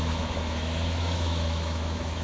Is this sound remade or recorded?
remade